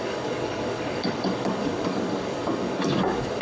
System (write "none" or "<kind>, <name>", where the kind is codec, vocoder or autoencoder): codec, DAC